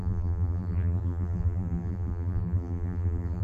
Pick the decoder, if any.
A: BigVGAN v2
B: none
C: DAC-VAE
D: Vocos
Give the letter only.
A